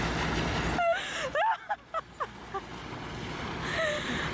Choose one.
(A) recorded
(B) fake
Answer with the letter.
A